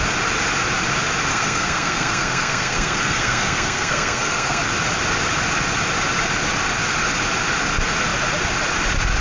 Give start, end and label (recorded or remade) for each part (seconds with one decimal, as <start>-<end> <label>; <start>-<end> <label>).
0.0-1.3 recorded; 1.3-4.6 remade; 4.6-9.2 recorded